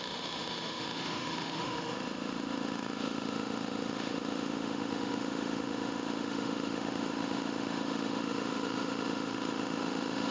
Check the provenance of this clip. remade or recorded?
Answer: remade